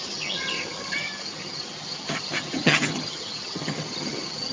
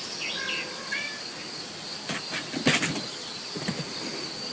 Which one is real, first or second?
second